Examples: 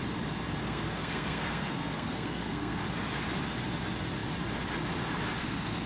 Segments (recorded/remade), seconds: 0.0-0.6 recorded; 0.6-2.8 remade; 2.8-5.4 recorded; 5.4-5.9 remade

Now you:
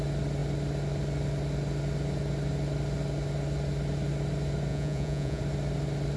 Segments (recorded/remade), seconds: 0.0-4.7 recorded; 4.7-5.4 remade; 5.4-6.2 recorded

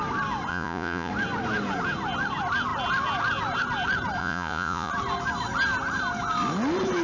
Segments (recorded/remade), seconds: 0.0-0.5 recorded; 0.5-1.1 remade; 1.1-4.2 recorded; 4.2-4.9 remade; 4.9-7.0 recorded

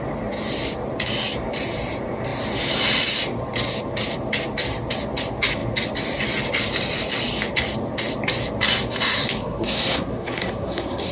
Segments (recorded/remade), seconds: 0.0-9.4 recorded; 9.4-11.1 remade

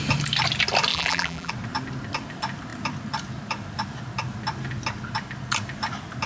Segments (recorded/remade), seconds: 0.0-0.9 recorded; 0.9-1.5 remade; 1.5-6.3 recorded

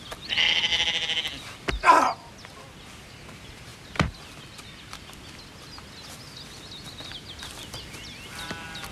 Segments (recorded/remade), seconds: 0.0-8.9 recorded

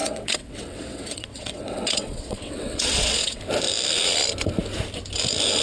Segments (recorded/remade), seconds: 0.0-3.4 remade; 3.4-5.6 recorded